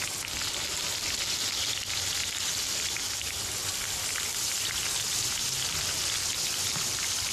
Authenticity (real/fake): real